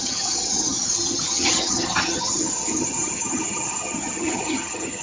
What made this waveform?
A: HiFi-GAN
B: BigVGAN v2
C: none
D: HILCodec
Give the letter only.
A